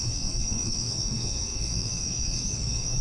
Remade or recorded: remade